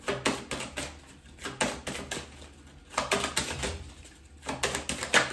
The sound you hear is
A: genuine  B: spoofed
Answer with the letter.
A